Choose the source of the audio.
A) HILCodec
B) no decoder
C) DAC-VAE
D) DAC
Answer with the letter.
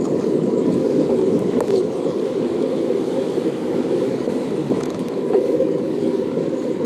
D